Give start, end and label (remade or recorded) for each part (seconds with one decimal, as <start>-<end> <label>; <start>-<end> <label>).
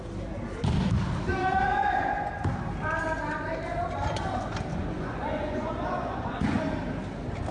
0.0-1.7 recorded; 1.7-2.3 remade; 2.3-4.7 recorded; 4.7-6.6 remade; 6.6-7.5 recorded